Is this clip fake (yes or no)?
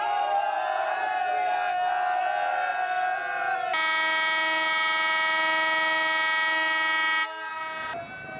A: no